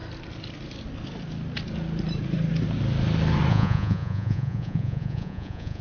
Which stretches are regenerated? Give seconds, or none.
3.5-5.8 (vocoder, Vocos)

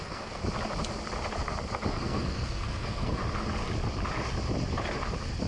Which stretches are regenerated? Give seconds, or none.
0.0-0.4 (codec, SNAC); 1.9-3.2

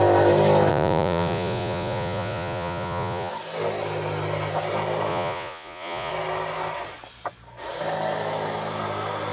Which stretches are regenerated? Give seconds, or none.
0.7-3.3 (vocoder, Vocos); 5.1-6.1

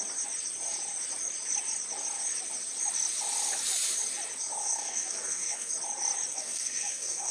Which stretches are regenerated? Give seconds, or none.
4.6-5.7 (codec, SNAC); 6.3-7.3

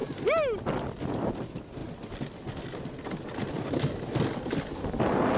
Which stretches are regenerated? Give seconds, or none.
none